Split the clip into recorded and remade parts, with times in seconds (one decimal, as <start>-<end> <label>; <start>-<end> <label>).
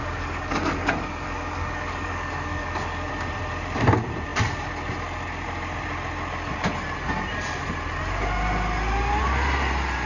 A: 0.0-3.1 remade; 3.1-10.1 recorded